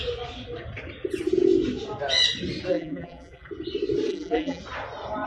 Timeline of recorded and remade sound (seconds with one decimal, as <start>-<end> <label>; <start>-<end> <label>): 0.0-2.7 recorded; 2.7-3.5 remade; 3.5-4.1 recorded; 4.1-4.6 remade; 4.6-5.3 recorded